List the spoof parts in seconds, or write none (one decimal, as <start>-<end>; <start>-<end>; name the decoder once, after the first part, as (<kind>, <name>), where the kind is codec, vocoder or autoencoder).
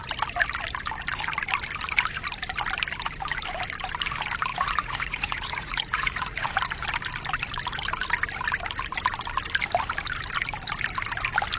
4.5-6.5 (vocoder, Vocos)